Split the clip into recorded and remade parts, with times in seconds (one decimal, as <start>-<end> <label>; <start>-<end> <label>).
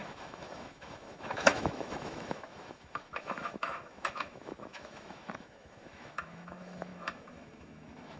0.0-8.2 remade